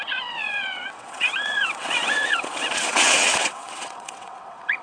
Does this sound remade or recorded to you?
remade